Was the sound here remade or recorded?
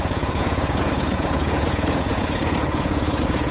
remade